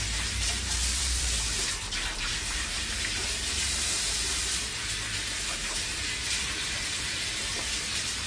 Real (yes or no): no